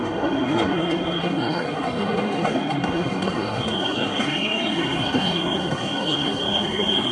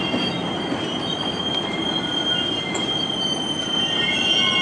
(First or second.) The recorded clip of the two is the second